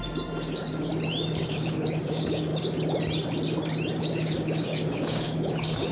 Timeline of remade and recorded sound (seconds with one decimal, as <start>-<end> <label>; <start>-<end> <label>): 0.0-0.9 remade; 0.9-1.5 recorded; 1.5-2.5 remade; 2.5-4.0 recorded; 4.0-5.9 remade